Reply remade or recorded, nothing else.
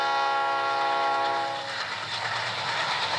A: recorded